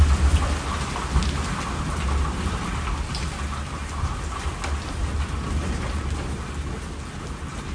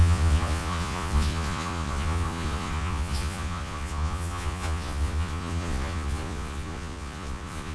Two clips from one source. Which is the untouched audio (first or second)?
first